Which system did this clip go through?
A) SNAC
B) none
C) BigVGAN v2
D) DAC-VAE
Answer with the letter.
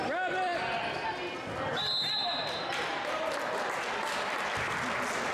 B